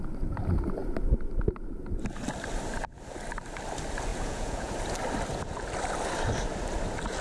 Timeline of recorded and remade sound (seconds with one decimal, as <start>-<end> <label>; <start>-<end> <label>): 0.0-4.1 recorded; 4.1-4.7 remade; 4.7-7.2 recorded